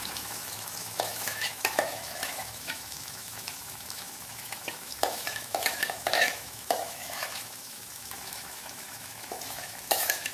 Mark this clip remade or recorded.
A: remade